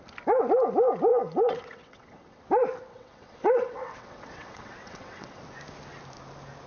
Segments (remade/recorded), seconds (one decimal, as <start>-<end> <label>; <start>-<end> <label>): 0.0-1.1 recorded; 1.1-2.4 remade; 2.4-2.9 recorded; 2.9-5.4 remade; 5.4-6.7 recorded